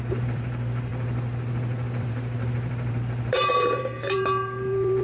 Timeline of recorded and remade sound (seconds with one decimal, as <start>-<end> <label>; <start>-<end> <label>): 0.0-0.9 remade; 0.9-2.0 recorded; 2.0-5.0 remade